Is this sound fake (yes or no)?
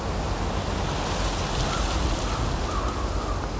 no